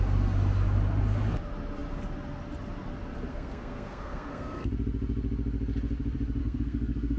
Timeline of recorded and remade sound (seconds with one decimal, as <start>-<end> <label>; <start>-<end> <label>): 0.0-3.3 recorded; 3.3-4.7 remade; 4.7-6.4 recorded; 6.4-7.2 remade